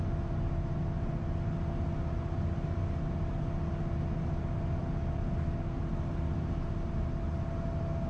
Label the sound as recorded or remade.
recorded